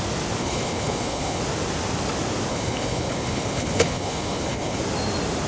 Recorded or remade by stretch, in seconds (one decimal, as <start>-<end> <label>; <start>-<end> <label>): 0.0-0.4 recorded; 0.4-1.4 remade; 1.4-2.5 recorded; 2.5-4.8 remade; 4.8-5.5 recorded